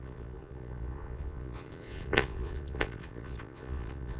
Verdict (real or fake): fake